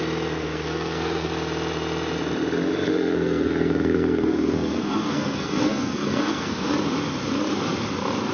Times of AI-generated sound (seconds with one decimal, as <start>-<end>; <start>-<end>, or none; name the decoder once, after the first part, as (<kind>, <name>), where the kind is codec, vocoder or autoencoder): 0.4-1.3 (codec, SNAC); 2.9-6.7